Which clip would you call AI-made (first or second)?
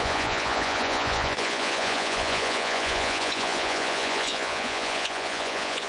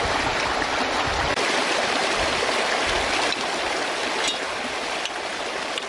first